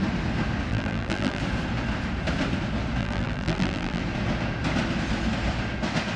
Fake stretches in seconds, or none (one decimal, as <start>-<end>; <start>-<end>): 0.7-1.4; 3.0-4.0